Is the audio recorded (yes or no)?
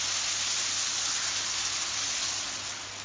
yes